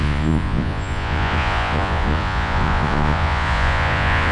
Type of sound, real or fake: fake